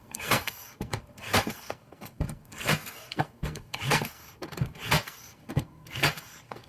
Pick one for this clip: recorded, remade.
remade